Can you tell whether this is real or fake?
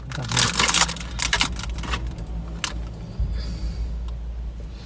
real